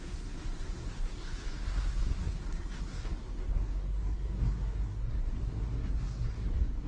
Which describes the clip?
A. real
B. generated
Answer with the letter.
B